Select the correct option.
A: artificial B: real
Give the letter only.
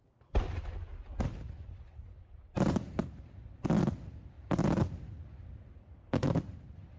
B